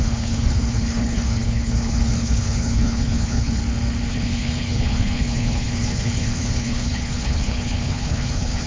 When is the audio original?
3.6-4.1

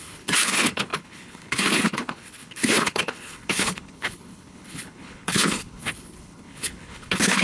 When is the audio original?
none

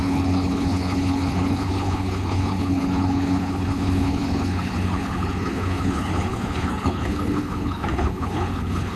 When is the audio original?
none